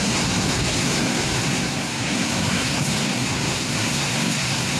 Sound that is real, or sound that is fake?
fake